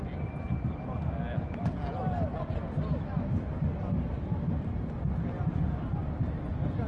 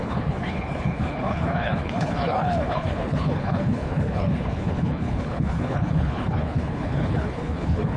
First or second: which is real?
first